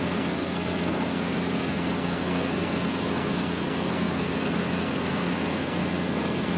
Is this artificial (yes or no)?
yes